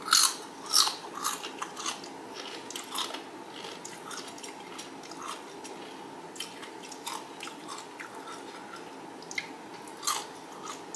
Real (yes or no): yes